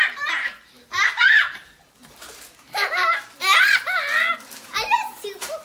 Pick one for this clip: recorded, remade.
remade